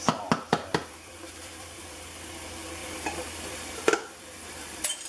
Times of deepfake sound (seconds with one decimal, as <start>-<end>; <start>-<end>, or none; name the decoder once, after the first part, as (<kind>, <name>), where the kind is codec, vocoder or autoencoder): 0.7-2.3 (vocoder, BigVGAN v2); 2.8-5.1